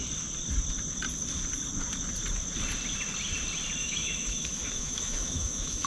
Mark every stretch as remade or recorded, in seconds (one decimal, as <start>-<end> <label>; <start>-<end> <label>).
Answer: 0.0-3.8 recorded; 3.8-5.9 remade